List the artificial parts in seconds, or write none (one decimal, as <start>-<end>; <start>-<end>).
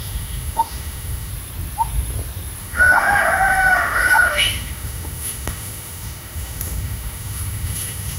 0.0-1.3; 2.6-8.2